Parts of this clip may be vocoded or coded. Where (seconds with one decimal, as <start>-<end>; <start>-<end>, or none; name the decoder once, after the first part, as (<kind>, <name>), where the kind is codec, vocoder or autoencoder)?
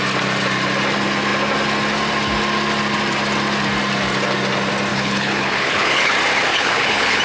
4.9-6.1 (codec, HILCodec); 6.5-7.2